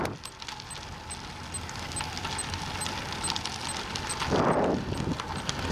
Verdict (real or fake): real